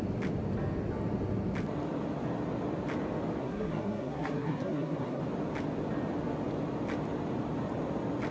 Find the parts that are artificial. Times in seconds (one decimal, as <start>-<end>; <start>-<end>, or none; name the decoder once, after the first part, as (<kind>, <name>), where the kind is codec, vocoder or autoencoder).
3.4-5.2 (codec, SNAC)